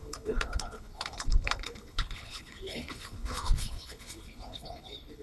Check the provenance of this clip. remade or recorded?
remade